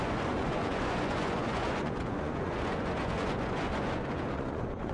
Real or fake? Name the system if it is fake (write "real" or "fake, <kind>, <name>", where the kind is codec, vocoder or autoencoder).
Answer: fake, vocoder, Vocos